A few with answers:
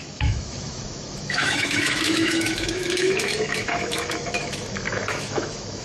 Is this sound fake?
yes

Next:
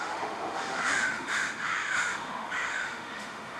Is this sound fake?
yes